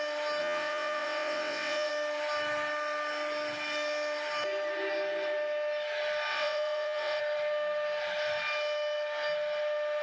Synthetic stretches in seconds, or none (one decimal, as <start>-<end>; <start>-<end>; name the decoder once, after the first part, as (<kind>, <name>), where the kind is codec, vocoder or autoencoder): 0.4-1.9 (vocoder, WaveNeXt); 6.3-7.2